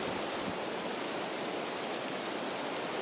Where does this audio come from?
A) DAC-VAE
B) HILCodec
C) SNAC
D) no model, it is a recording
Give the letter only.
D